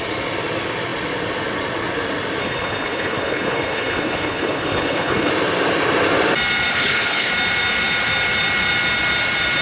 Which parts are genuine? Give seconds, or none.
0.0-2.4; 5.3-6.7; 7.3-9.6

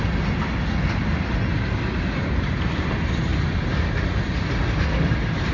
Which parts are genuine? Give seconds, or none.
0.0-5.5

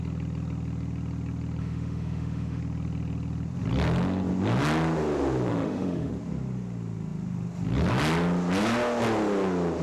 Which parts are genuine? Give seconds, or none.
0.0-1.6; 2.6-5.5; 6.1-9.8

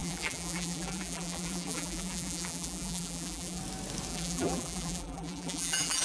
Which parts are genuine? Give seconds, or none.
3.6-4.1

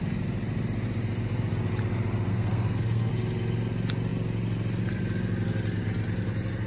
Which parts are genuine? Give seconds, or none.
0.0-2.3; 3.1-6.7

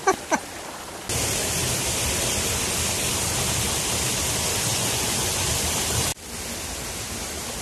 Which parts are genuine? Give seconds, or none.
0.0-4.7; 5.5-7.6